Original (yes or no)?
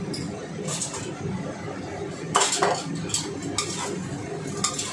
yes